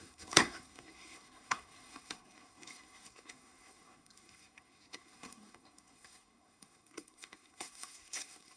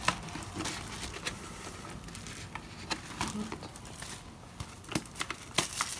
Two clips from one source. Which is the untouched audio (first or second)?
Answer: second